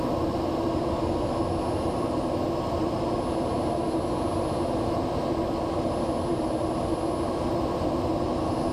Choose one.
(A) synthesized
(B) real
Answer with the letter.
B